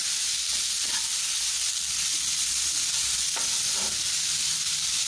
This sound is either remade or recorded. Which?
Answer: recorded